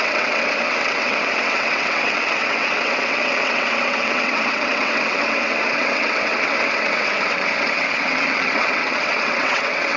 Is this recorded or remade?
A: remade